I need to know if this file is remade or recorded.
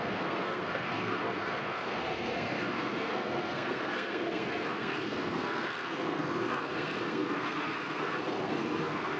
remade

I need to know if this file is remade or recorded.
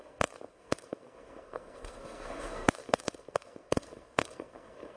remade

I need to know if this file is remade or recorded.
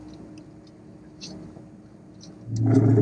recorded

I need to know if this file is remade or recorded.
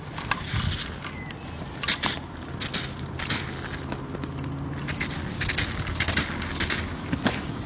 recorded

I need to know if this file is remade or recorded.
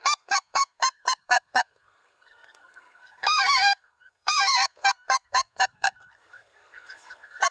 remade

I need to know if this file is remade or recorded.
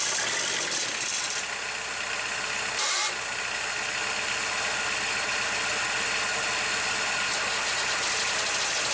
recorded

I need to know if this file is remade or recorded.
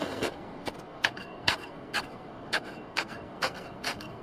remade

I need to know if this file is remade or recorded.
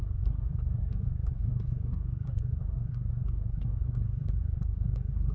remade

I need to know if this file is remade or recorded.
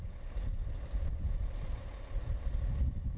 recorded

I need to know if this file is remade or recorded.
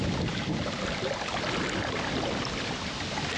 recorded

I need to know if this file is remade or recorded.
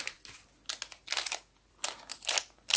recorded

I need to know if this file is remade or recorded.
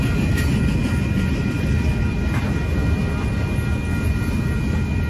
recorded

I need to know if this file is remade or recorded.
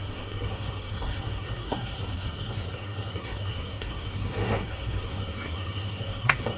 remade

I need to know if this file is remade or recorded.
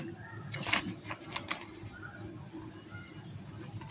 recorded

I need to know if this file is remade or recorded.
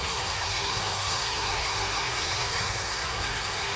remade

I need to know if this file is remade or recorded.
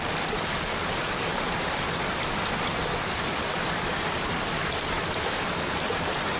recorded